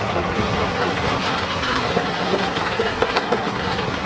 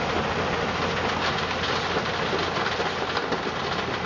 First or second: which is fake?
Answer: first